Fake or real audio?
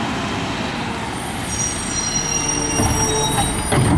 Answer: real